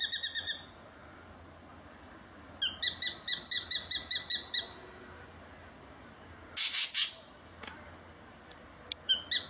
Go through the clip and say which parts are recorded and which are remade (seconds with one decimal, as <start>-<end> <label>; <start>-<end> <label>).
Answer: 0.0-9.5 recorded

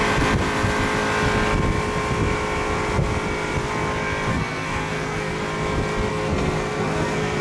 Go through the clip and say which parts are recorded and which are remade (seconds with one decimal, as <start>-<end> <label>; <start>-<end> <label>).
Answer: 0.0-4.3 recorded; 4.3-5.4 remade; 5.4-6.1 recorded; 6.1-7.4 remade

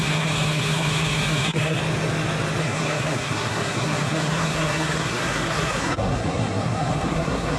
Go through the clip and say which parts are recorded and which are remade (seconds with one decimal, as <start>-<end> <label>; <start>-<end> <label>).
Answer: 0.0-1.8 remade; 1.8-2.6 recorded; 2.6-7.6 remade

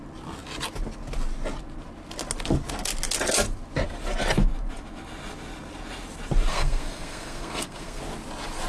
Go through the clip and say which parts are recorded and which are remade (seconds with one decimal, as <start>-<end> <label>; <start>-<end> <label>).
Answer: 0.0-6.5 recorded; 6.5-8.0 remade; 8.0-8.7 recorded

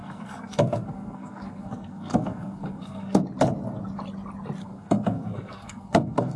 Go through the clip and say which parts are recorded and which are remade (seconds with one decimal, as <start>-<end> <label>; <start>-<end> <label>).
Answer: 0.0-3.2 remade; 3.2-4.6 recorded; 4.6-6.4 remade

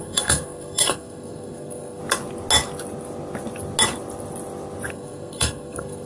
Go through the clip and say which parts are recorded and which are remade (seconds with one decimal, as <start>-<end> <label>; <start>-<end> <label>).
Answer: 0.0-2.0 remade; 2.0-4.9 recorded; 4.9-6.1 remade

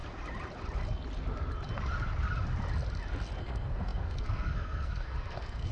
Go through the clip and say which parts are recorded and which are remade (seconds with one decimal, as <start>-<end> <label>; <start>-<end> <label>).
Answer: 0.0-3.4 recorded; 3.4-5.7 remade